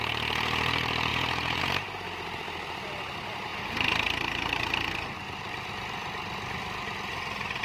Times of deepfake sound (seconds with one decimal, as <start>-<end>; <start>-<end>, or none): 1.1-1.6